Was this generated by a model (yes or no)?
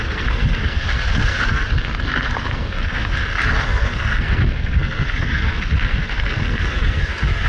yes